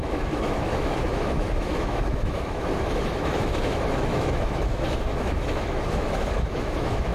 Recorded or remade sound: remade